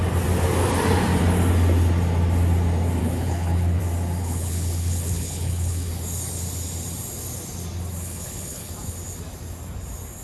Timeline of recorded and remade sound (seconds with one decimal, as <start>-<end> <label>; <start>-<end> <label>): 0.0-3.0 recorded; 3.0-3.8 remade; 3.8-4.2 recorded; 4.2-5.9 remade; 5.9-8.0 recorded; 8.0-8.7 remade; 8.7-10.2 recorded